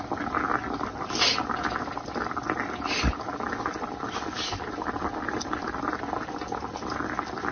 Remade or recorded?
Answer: recorded